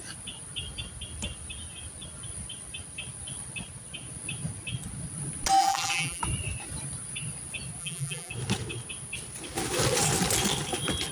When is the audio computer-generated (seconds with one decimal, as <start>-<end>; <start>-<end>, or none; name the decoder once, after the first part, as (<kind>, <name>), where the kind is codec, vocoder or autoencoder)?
5.6-6.2 (vocoder, BigVGAN v2); 7.8-8.3